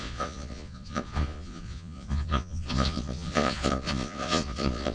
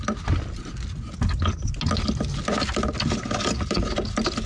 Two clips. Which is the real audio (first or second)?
second